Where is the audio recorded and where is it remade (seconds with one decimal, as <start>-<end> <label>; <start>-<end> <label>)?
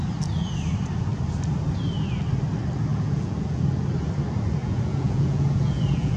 0.0-2.9 recorded; 2.9-3.6 remade; 3.6-4.6 recorded; 4.6-6.2 remade